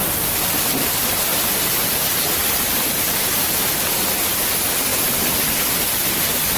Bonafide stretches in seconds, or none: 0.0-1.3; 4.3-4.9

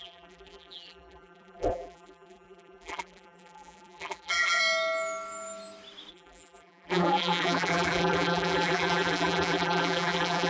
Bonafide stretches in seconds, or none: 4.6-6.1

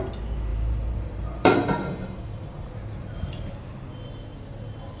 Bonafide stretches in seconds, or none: 0.0-0.5; 3.5-4.3

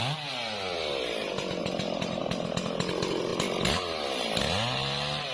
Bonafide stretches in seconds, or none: 0.0-1.6; 2.2-3.3; 4.4-5.3

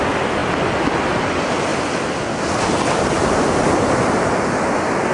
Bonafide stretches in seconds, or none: 0.4-1.0; 1.7-5.1

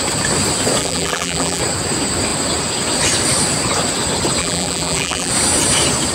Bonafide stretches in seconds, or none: 0.0-0.8; 1.6-4.4; 5.3-6.1

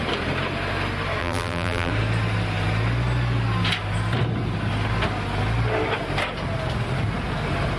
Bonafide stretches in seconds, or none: 0.0-1.2; 1.9-7.8